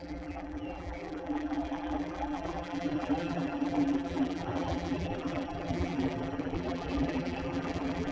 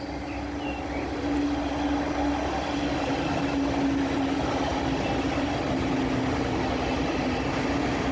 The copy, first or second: first